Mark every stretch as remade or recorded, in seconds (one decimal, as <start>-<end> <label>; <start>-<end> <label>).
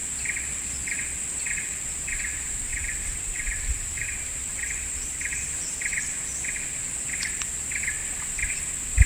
0.0-2.7 recorded; 2.7-5.5 remade; 5.5-9.1 recorded